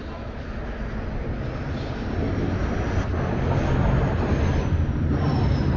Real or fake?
real